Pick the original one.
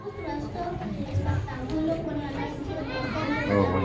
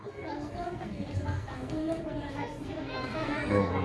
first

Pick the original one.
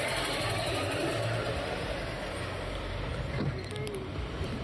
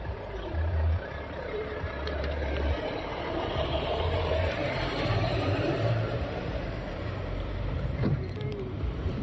first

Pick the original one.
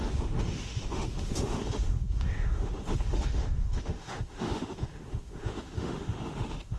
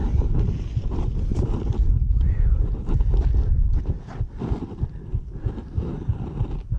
second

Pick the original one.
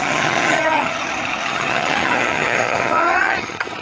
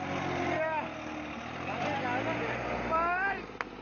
second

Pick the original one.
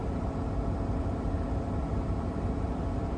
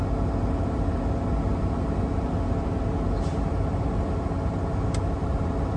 second